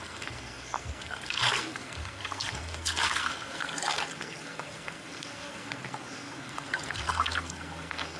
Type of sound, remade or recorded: remade